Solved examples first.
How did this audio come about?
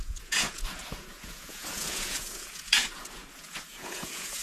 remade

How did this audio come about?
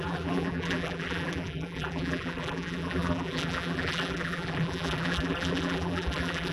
remade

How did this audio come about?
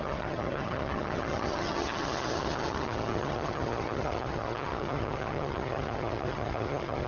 remade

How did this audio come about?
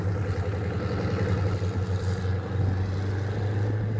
recorded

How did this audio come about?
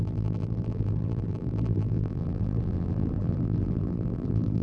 remade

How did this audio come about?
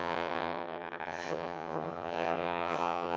remade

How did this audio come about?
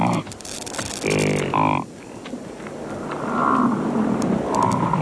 remade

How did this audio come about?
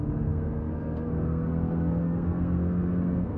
remade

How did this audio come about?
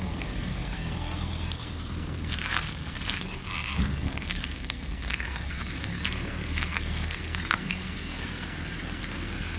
remade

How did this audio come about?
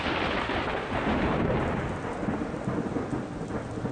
recorded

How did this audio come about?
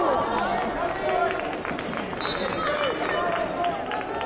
recorded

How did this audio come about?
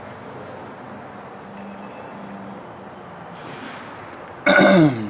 recorded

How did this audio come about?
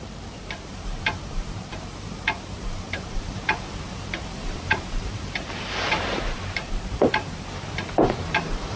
remade